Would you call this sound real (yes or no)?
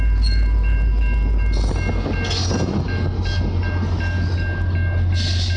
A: yes